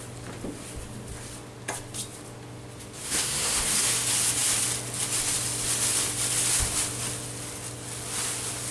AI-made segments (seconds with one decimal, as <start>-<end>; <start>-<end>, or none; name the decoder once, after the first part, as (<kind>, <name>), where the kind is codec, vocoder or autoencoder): 3.0-3.7 (codec, SNAC)